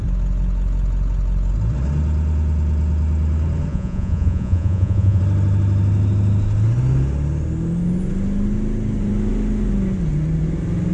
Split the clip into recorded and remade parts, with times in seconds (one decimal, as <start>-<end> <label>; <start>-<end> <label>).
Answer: 0.0-3.7 recorded; 3.7-5.2 remade; 5.2-10.9 recorded